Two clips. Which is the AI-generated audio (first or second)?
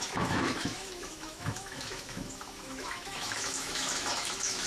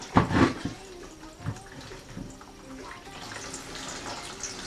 first